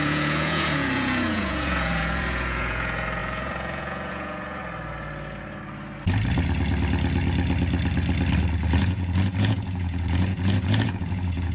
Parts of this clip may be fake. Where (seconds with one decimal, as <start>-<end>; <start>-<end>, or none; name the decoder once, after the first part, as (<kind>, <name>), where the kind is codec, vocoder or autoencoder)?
0.0-4.6 (vocoder, Vocos); 8.8-11.5